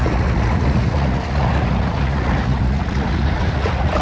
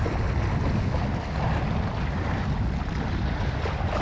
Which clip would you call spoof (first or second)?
first